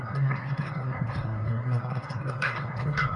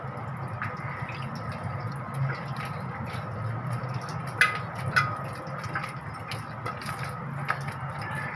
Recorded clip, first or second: second